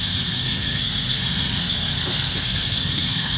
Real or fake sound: fake